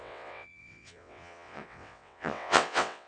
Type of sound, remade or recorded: remade